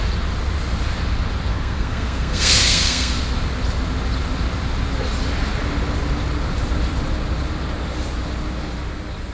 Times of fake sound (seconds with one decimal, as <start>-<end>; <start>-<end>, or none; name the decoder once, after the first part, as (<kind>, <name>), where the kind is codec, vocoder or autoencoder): 1.5-3.2 (codec, SNAC)